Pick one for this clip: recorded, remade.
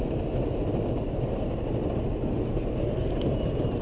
recorded